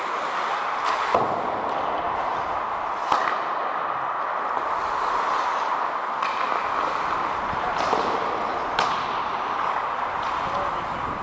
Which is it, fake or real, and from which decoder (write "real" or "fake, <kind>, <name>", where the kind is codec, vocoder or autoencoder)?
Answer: real